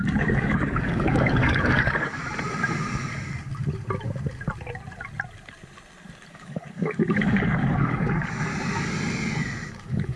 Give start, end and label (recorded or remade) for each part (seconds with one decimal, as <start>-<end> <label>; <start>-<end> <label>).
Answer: 0.0-2.2 remade; 2.2-6.3 recorded; 6.3-8.5 remade; 8.5-9.7 recorded; 9.7-10.2 remade